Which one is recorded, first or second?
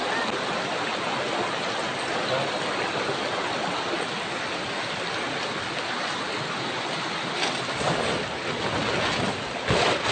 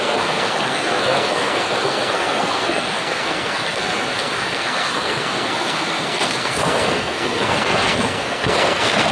first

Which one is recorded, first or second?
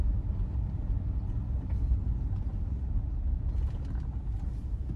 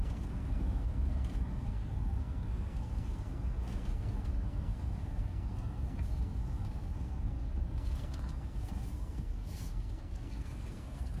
first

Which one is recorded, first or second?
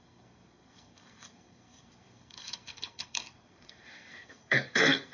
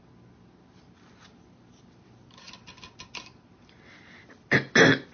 second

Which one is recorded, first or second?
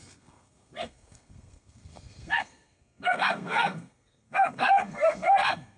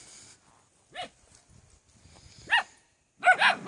second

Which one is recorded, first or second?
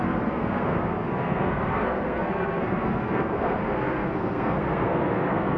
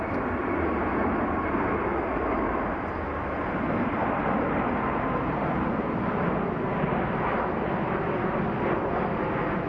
second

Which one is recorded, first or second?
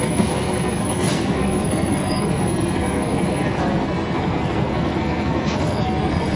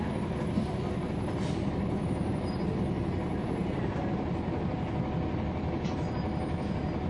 second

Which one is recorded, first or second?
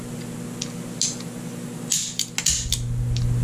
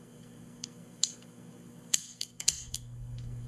first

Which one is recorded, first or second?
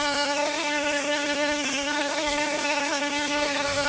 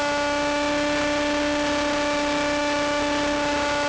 second